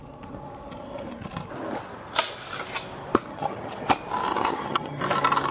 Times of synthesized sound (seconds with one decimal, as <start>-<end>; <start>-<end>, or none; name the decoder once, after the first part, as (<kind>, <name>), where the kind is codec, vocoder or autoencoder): 3.3-3.9 (vocoder, HiFi-GAN); 4.3-5.0

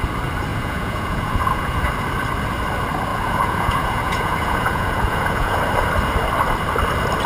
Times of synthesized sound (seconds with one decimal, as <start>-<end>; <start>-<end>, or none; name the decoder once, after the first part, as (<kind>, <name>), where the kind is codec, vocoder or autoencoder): 0.5-1.9 (vocoder, Vocos); 3.1-5.6

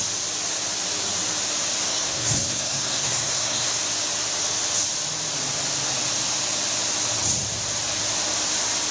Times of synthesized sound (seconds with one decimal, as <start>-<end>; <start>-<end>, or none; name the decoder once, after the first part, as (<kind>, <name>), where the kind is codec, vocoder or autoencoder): 1.9-3.8 (codec, SNAC)

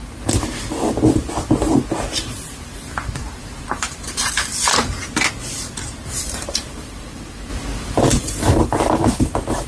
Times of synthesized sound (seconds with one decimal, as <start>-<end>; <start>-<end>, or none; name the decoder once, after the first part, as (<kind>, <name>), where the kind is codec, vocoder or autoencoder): 2.6-4.5 (vocoder, BigVGAN v2); 6.2-7.5; 8.1-9.7

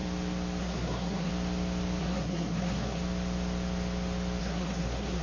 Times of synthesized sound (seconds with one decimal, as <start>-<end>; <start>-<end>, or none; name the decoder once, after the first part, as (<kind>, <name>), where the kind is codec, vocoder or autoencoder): 0.6-1.3 (codec, SNAC); 2.0-3.0; 4.4-5.2

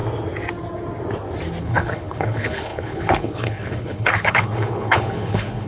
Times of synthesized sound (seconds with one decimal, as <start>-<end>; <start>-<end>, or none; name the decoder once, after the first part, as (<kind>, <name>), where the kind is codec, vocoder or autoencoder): 1.6-5.7 (codec, HILCodec)

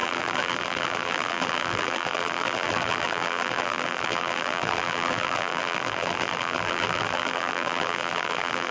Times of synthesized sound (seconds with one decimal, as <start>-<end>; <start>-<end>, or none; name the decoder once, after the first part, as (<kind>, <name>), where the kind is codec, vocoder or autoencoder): 0.0-8.7 (vocoder, BigVGAN v2)

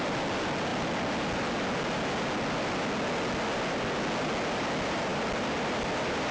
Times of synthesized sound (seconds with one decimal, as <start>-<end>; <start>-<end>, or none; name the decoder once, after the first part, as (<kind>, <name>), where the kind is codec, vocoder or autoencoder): none